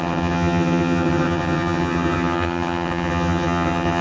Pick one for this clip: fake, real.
fake